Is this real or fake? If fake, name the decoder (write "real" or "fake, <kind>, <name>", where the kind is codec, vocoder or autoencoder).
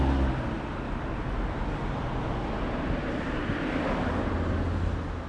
real